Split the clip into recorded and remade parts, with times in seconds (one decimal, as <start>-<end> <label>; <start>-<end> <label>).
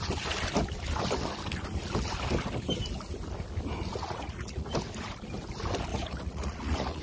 0.0-3.9 recorded; 3.9-4.7 remade; 4.7-5.9 recorded; 5.9-7.0 remade